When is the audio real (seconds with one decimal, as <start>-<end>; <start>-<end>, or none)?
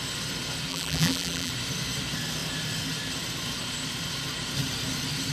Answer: 0.0-0.7; 1.5-5.3